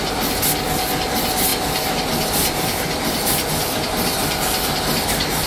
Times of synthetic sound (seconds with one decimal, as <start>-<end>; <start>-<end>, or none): 1.5-4.8